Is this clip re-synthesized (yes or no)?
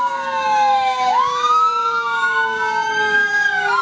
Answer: yes